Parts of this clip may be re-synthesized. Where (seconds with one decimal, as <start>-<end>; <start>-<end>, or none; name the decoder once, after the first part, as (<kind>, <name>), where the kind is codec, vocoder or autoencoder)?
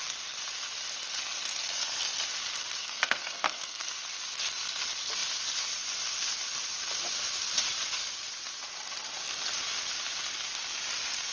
2.8-3.9 (codec, SNAC)